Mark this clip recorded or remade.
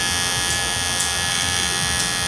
recorded